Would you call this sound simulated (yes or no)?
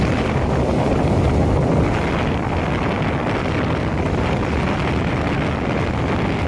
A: no